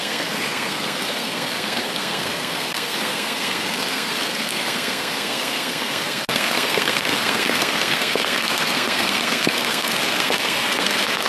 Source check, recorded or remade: remade